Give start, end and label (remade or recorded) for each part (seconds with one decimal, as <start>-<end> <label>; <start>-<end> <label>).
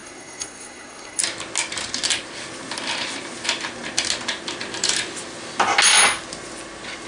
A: 0.0-1.2 remade; 1.2-7.1 recorded